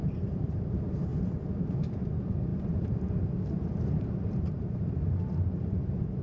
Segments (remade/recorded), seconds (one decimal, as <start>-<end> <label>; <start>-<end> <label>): 0.0-6.2 remade

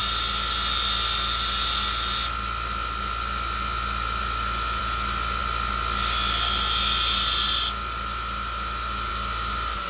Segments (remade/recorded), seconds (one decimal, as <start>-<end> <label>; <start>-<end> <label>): 0.0-9.9 recorded

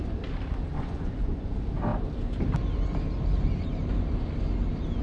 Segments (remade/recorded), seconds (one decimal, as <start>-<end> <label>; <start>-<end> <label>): 0.0-0.7 recorded; 0.7-1.5 remade; 1.5-5.0 recorded

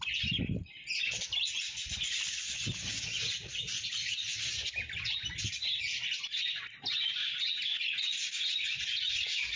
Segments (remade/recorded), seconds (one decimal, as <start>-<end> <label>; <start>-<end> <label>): 0.0-9.6 recorded

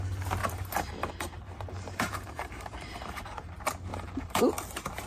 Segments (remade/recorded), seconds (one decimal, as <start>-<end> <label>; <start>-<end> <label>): 0.0-0.4 recorded; 0.4-3.5 remade; 3.5-3.9 recorded; 3.9-4.4 remade; 4.4-5.1 recorded